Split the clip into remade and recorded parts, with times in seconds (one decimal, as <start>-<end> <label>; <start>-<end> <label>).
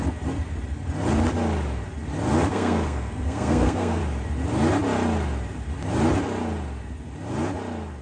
0.0-2.5 recorded; 2.5-4.0 remade; 4.0-8.0 recorded